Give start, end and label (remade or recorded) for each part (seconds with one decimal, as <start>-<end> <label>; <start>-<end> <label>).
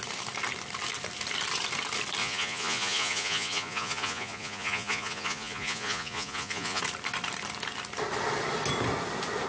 0.0-2.2 recorded; 2.2-6.8 remade; 6.8-9.5 recorded